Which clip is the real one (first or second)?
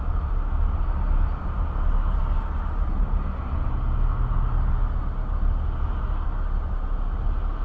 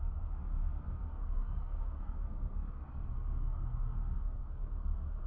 first